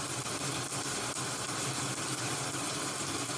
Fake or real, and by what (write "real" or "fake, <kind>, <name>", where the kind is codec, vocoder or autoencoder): real